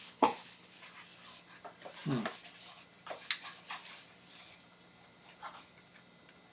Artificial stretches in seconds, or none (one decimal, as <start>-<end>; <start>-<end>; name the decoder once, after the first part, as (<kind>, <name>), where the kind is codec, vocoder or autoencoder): 0.0-0.7 (codec, HILCodec)